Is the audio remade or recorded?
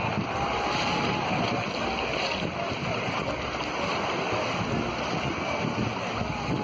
recorded